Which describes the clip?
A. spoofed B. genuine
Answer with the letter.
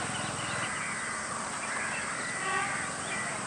B